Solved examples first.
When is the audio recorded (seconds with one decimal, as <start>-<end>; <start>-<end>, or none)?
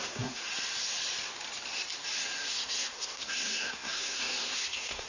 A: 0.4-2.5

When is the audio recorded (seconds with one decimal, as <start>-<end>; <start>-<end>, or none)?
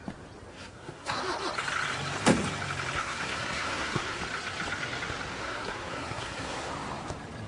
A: 0.0-0.5; 1.2-3.0; 4.2-5.3; 6.7-7.5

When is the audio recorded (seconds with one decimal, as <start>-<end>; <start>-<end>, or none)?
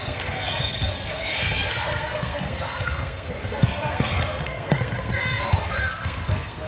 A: none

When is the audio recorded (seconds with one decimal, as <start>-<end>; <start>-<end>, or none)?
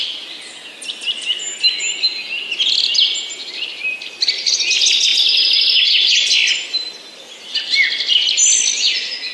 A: 0.0-9.3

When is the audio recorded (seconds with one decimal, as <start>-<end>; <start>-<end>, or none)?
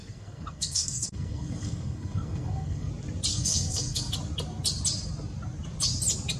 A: 2.9-3.3; 4.1-6.4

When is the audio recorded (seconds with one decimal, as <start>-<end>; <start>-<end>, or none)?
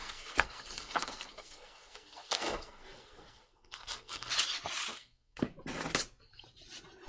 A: 4.3-4.9; 5.5-7.1